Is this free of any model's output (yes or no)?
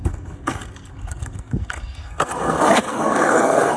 no